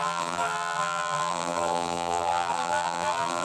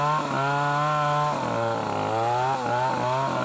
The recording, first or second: second